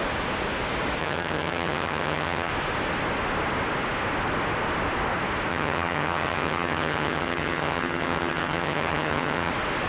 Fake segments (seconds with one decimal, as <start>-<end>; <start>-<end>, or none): 1.0-2.5; 5.5-9.5